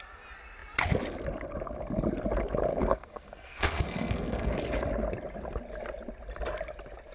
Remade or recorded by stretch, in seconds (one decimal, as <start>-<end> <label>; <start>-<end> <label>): 0.0-2.8 recorded; 2.8-4.5 remade; 4.5-7.1 recorded